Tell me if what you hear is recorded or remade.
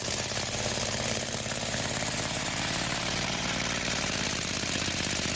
remade